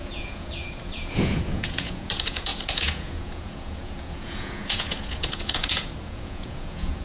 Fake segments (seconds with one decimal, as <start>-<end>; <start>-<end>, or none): 0.0-7.0